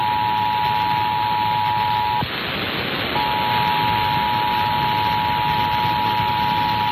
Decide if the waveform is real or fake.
real